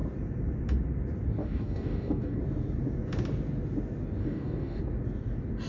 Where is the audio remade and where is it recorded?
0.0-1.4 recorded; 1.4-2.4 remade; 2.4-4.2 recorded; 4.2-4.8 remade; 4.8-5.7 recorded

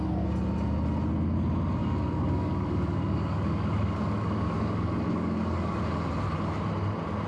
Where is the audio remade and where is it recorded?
0.0-1.8 recorded; 1.8-5.8 remade; 5.8-7.3 recorded

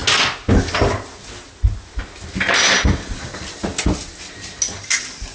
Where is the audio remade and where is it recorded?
0.0-5.3 recorded

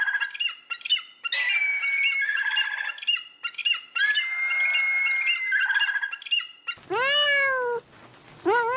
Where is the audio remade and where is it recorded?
0.0-8.8 recorded

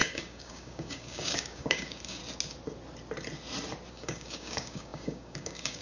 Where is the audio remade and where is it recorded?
0.0-2.2 remade; 2.2-3.9 recorded; 3.9-5.8 remade

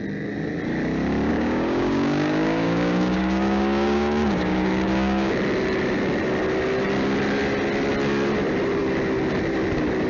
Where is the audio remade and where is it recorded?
0.0-1.3 recorded; 1.3-5.3 remade; 5.3-10.1 recorded

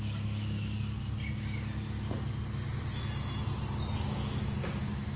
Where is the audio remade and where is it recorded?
0.0-1.0 remade; 1.0-4.1 recorded; 4.1-5.2 remade